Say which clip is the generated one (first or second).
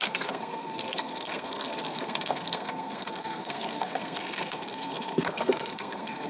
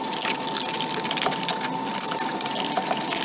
first